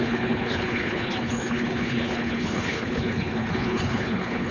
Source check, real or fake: fake